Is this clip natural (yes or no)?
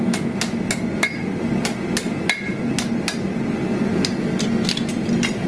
yes